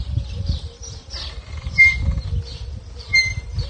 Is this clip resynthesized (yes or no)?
yes